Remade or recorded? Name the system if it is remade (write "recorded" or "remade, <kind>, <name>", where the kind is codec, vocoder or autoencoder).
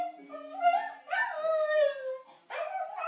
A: recorded